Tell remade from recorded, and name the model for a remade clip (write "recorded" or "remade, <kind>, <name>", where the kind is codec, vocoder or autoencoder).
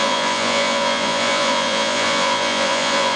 remade, vocoder, Vocos